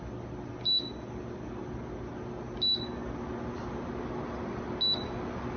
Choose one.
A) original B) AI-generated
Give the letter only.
A